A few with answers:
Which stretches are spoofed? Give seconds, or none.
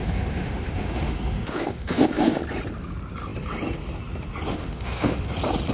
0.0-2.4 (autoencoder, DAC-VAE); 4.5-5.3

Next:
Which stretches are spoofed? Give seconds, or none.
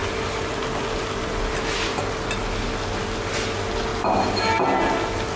none